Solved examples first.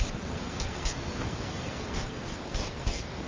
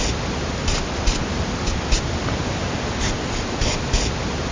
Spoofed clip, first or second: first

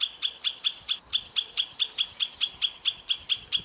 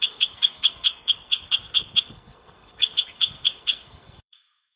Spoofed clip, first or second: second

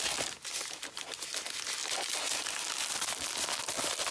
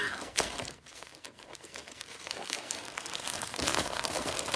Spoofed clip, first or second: second